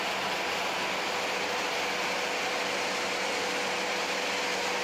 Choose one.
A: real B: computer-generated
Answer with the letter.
A